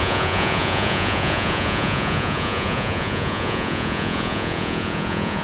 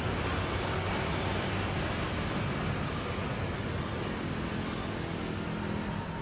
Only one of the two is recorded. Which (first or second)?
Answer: second